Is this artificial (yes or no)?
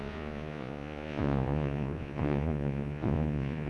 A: yes